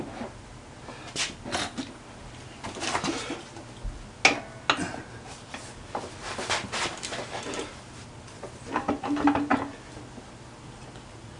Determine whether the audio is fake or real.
real